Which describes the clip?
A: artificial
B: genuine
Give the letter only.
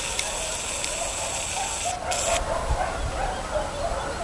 B